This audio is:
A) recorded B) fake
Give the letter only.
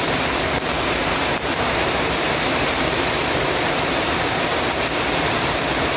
B